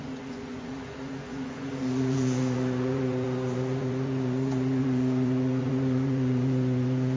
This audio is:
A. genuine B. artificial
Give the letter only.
B